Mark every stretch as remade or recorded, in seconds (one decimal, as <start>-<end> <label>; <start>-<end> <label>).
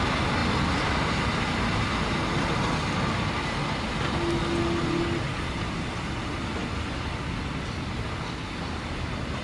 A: 0.0-9.4 recorded